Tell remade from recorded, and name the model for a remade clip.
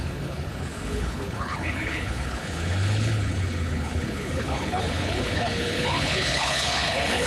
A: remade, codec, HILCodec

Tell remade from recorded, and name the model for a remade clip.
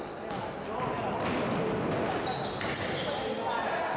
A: recorded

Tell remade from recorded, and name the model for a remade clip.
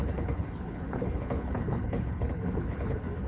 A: remade, codec, HILCodec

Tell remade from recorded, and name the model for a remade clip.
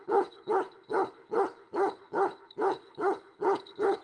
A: remade, codec, HILCodec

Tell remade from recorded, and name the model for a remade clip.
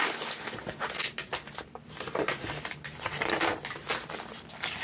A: recorded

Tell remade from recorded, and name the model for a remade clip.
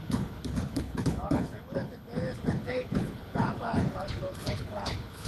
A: remade, codec, HILCodec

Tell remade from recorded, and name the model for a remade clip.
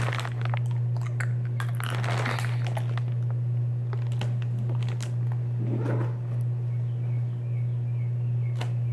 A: recorded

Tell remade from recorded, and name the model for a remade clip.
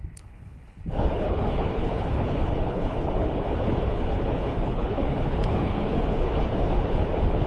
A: remade, codec, HILCodec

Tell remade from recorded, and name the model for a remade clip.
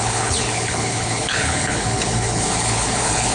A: remade, codec, HILCodec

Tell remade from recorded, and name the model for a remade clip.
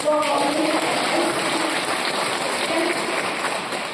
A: recorded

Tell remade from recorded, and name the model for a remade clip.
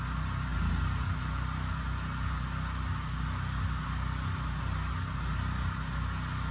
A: recorded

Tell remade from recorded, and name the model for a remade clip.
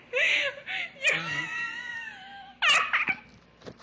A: recorded